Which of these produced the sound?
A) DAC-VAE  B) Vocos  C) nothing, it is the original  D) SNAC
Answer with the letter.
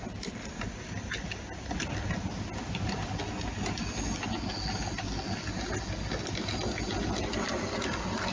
C